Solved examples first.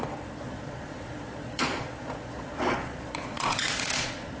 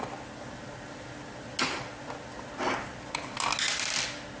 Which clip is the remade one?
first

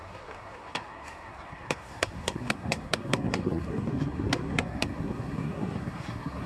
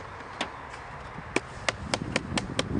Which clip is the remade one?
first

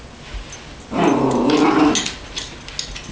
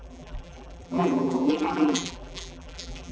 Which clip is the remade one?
second